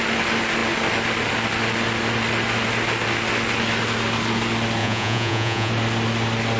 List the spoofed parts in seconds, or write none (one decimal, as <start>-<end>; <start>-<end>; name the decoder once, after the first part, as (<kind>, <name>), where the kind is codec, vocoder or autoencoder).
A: 4.8-5.7 (vocoder, Vocos)